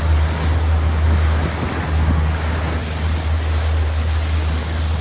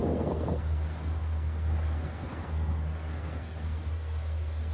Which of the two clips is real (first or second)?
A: first